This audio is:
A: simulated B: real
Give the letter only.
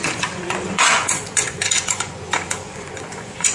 A